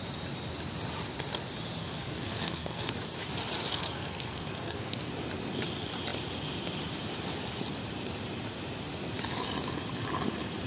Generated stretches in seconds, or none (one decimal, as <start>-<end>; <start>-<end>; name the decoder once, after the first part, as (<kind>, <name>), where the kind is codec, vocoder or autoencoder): 1.8-2.9 (codec, SNAC); 3.7-5.1